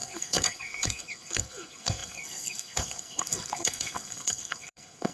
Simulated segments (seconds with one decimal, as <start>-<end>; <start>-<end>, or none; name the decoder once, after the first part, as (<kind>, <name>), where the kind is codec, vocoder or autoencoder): 0.0-5.1 (codec, SNAC)